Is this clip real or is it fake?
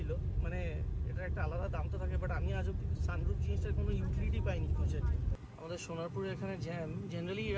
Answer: real